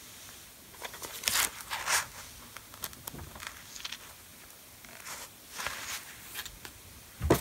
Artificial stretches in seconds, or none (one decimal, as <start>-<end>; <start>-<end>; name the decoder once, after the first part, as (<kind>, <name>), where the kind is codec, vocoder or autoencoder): none